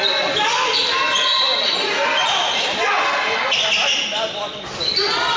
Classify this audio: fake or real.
real